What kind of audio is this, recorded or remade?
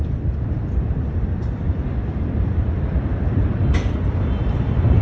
remade